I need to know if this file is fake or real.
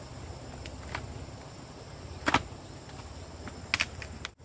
real